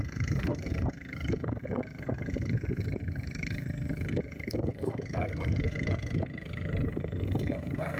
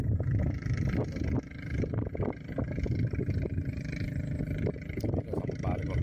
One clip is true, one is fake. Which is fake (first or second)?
first